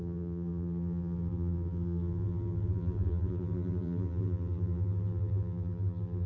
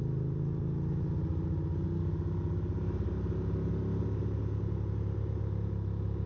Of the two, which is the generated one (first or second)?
first